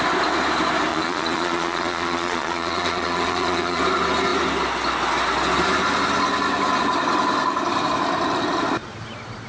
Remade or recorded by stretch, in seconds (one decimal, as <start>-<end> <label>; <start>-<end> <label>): 0.0-0.9 recorded; 0.9-3.8 remade; 3.8-9.5 recorded